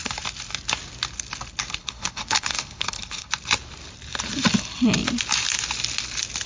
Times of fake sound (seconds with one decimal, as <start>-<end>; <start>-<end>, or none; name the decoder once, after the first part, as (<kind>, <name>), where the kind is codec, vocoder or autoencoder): 1.8-3.3 (codec, HILCodec)